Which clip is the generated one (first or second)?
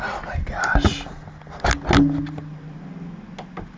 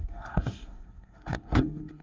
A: second